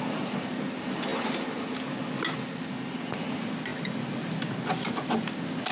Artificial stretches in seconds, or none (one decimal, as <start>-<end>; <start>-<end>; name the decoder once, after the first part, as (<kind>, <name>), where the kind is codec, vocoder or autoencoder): none